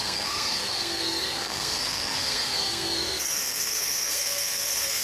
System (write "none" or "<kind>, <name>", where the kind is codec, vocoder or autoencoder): codec, SNAC